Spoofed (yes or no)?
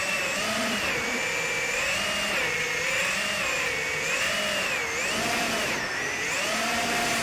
no